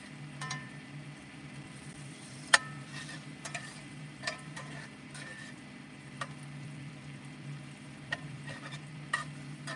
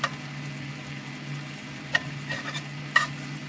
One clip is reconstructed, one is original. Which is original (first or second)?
second